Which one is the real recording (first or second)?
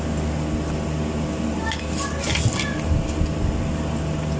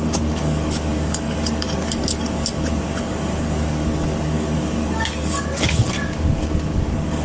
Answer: first